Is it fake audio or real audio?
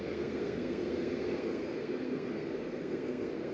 fake